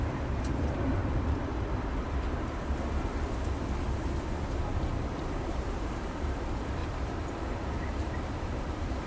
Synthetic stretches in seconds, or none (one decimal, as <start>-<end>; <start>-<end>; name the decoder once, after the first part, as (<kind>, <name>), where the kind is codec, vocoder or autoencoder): 0.0-1.0 (vocoder, BigVGAN v2); 5.4-9.1